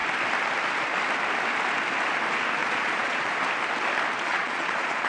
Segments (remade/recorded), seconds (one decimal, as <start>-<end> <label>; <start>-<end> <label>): 0.0-2.6 recorded; 2.6-3.3 remade; 3.3-4.3 recorded; 4.3-5.1 remade